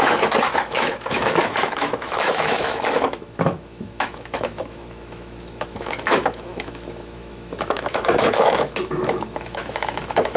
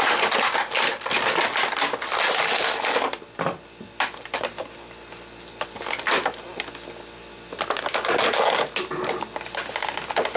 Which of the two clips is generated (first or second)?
first